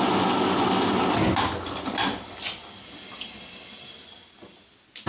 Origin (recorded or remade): recorded